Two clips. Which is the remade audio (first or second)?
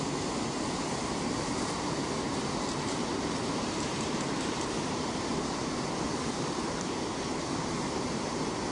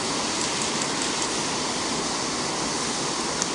first